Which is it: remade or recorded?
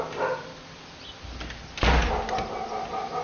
recorded